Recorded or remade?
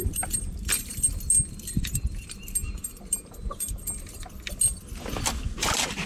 recorded